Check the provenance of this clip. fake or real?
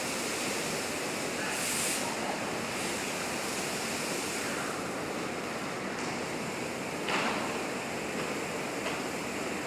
real